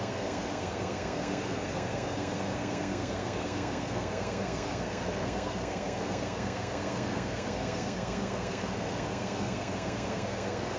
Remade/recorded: remade